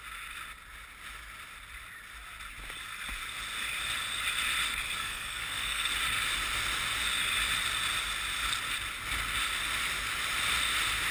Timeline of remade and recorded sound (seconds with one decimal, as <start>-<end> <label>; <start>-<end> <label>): 0.0-5.0 recorded; 5.0-5.9 remade; 5.9-11.1 recorded